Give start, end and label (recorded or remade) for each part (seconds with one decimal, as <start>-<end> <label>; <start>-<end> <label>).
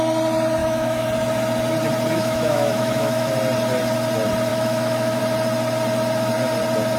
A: 0.0-0.6 recorded; 0.6-1.1 remade; 1.1-2.2 recorded; 2.2-3.3 remade; 3.3-4.5 recorded; 4.5-5.2 remade; 5.2-7.0 recorded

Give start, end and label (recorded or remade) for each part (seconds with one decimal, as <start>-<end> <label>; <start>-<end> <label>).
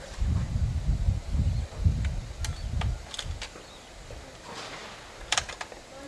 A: 0.0-6.1 recorded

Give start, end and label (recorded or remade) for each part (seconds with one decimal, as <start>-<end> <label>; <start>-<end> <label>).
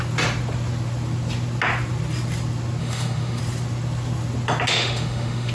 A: 0.0-2.8 recorded; 2.8-3.4 remade; 3.4-4.7 recorded; 4.7-5.5 remade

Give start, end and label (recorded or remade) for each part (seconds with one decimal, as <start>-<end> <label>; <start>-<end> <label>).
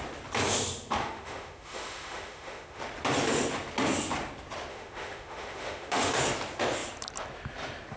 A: 0.0-1.0 recorded; 1.0-2.8 remade; 2.8-4.7 recorded; 4.7-6.1 remade; 6.1-8.0 recorded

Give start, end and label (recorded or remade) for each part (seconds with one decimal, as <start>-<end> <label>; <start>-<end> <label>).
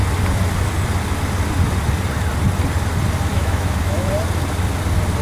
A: 0.0-3.3 recorded; 3.3-4.1 remade; 4.1-5.2 recorded